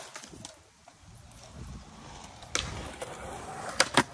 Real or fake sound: real